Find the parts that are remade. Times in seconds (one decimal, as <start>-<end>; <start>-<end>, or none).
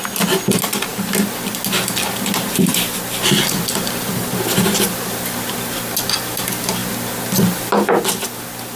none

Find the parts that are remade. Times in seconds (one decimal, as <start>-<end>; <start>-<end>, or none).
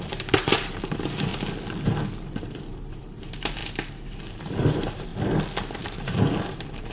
0.0-1.3; 2.4-3.6; 4.2-5.1; 5.8-6.9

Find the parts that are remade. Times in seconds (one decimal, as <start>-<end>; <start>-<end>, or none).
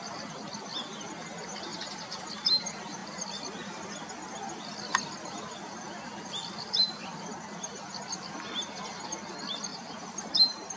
1.7-2.6; 9.7-10.8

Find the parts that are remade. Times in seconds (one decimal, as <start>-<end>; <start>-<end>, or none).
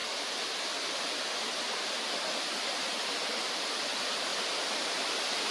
4.3-5.0